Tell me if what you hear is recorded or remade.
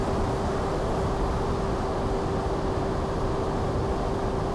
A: recorded